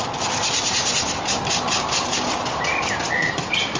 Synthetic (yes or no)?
no